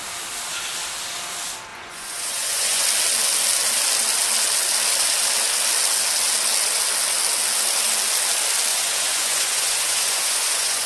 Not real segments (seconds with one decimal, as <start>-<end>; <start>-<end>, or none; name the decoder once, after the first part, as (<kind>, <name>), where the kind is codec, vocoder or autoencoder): 1.7-2.8 (vocoder, Vocos); 8.7-10.9